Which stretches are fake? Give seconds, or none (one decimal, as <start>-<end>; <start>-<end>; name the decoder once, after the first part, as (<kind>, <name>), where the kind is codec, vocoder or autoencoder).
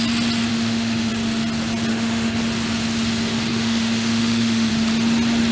0.5-1.1 (autoencoder, DAC-VAE); 1.9-2.4; 3.5-4.7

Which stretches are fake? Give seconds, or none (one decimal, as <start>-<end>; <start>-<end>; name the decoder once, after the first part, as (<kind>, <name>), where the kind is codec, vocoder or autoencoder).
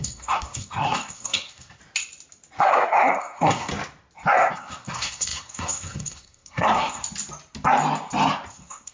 0.0-1.8 (codec, SNAC); 2.6-3.7; 4.5-7.0; 8.5-8.9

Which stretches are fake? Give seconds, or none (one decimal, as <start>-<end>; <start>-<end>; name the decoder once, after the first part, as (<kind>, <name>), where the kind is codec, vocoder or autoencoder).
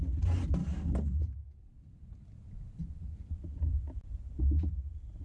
0.6-1.2 (codec, DAC)